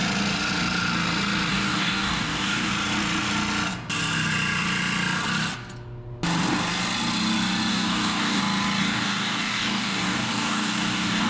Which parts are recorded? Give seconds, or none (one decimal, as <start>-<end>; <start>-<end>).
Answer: 0.0-1.5; 2.7-7.7; 8.4-8.8